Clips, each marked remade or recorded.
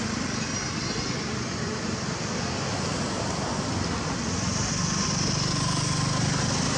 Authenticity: recorded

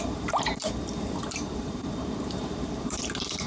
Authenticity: remade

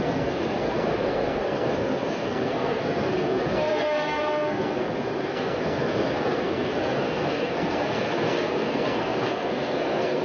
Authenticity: remade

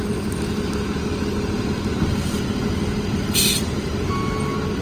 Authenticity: recorded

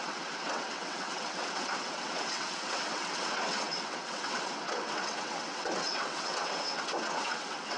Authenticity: remade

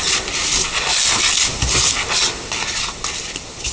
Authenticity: recorded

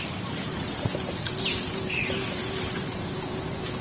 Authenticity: remade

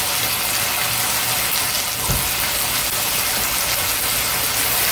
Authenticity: recorded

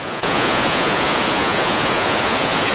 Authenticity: remade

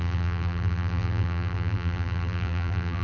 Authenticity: remade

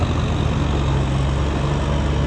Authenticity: recorded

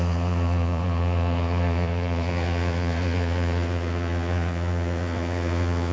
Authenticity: remade